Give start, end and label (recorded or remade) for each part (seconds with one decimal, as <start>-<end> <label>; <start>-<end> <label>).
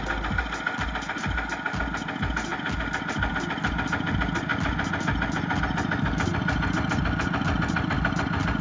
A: 0.0-8.6 recorded